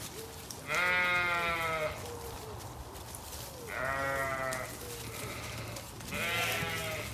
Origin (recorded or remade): recorded